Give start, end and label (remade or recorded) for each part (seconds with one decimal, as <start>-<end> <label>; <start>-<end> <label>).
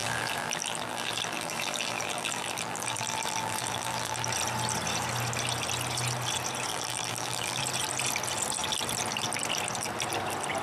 0.0-4.3 remade; 4.3-6.7 recorded; 6.7-7.6 remade; 7.6-10.6 recorded